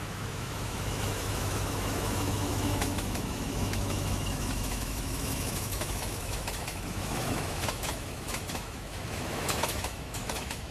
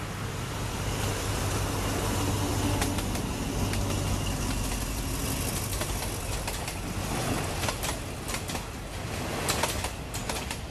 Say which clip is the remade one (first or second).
first